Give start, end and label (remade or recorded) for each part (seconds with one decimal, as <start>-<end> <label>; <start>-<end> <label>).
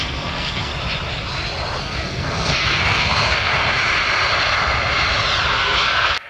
0.0-0.7 remade; 0.7-1.8 recorded; 1.8-3.5 remade; 3.5-5.5 recorded; 5.5-6.3 remade